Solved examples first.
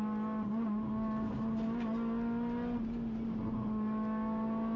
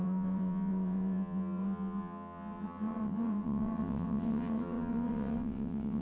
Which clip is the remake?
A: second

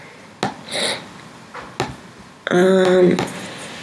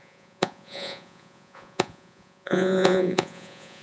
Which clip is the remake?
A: second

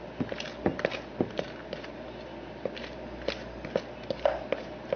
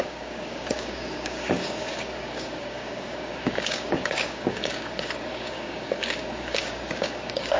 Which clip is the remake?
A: second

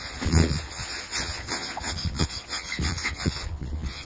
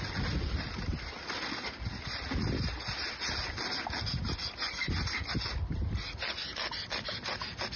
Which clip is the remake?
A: first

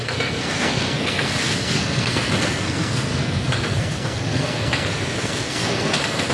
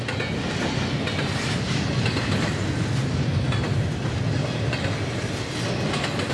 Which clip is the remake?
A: first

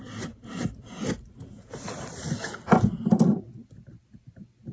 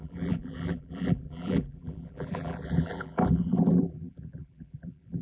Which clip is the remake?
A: second